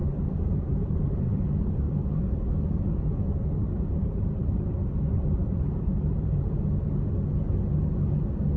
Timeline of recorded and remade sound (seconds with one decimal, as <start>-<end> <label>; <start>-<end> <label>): 0.0-2.2 remade; 2.2-3.6 recorded; 3.6-6.6 remade; 6.6-8.6 recorded